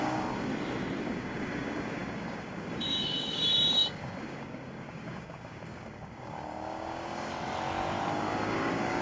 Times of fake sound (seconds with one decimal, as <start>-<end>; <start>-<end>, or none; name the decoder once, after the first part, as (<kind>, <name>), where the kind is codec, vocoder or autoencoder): 0.0-0.5 (codec, DAC); 1.0-7.3; 8.1-9.0